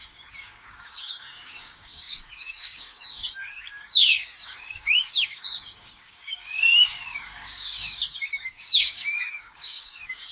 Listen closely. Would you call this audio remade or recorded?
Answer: remade